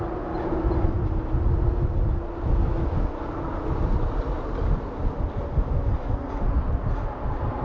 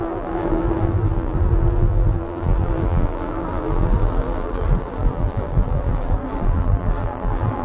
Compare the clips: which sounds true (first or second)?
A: first